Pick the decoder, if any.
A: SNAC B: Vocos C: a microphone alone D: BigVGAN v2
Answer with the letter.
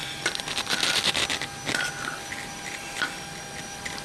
C